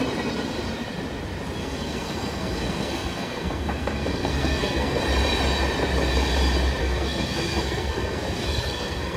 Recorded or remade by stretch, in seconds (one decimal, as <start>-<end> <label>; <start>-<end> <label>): 0.0-1.6 recorded; 1.6-5.0 remade; 5.0-6.8 recorded; 6.8-9.2 remade